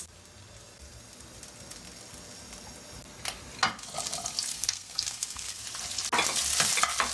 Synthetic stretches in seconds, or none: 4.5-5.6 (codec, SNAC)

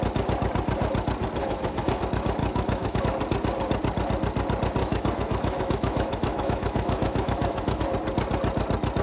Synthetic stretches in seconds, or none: 1.4-2.0 (autoencoder, DAC-VAE); 2.4-3.0; 4.8-7.8

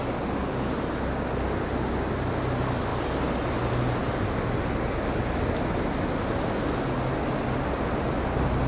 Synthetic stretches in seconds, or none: none

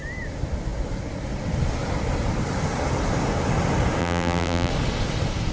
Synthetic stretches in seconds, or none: 4.0-4.7 (vocoder, BigVGAN v2)

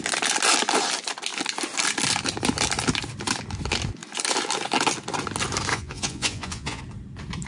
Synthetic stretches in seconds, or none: 5.7-6.8 (vocoder, Vocos)